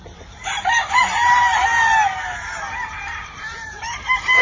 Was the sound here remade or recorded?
remade